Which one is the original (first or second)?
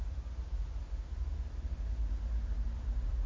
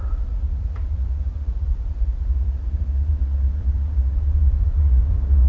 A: first